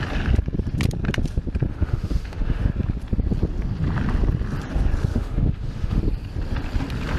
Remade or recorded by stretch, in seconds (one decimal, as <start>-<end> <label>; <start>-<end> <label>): 0.0-1.7 recorded; 1.7-2.7 remade; 2.7-5.1 recorded; 5.1-6.0 remade; 6.0-7.2 recorded